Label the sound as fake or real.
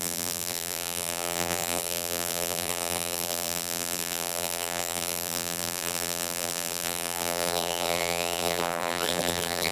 fake